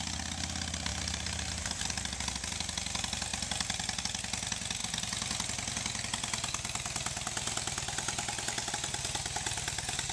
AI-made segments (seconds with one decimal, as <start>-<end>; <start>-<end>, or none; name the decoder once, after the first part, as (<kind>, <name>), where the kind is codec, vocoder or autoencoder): 0.9-1.9 (vocoder, BigVGAN v2)